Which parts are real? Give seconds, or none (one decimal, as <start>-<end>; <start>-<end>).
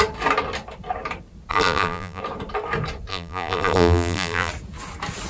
0.0-1.5; 2.2-3.1; 4.5-5.3